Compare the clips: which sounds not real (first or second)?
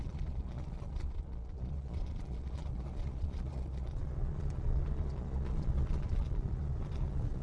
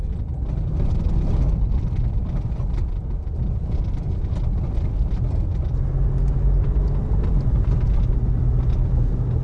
first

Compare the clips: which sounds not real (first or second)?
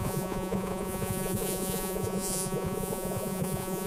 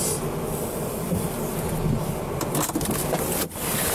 first